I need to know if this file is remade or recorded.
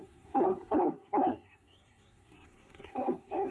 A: remade